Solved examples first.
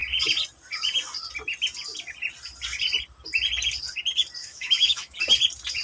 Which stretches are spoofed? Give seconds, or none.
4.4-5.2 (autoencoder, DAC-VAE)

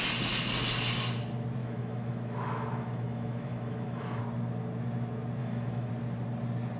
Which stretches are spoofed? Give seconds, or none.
1.6-4.2 (autoencoder, DAC-VAE); 5.4-5.9

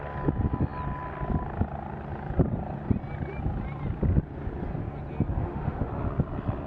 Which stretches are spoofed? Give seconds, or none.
5.4-5.9 (autoencoder, DAC-VAE)

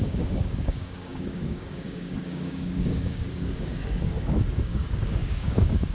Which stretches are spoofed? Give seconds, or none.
0.0-5.9 (codec, DAC)

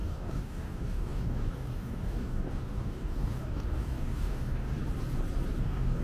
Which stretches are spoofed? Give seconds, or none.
0.0-4.8 (codec, DAC); 5.6-6.0

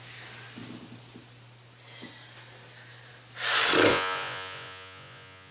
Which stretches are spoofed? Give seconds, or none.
3.9-5.5 (vocoder, Vocos)